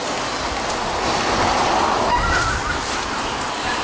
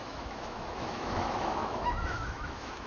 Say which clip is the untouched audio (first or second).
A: first